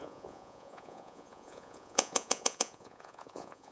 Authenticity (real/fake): fake